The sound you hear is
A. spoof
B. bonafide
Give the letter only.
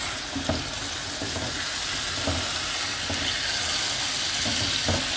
B